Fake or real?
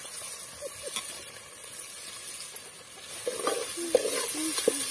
real